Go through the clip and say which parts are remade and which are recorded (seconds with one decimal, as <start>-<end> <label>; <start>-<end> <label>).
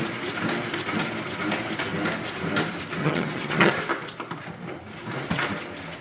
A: 0.0-3.0 recorded; 3.0-3.7 remade; 3.7-6.0 recorded